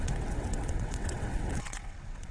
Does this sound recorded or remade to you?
remade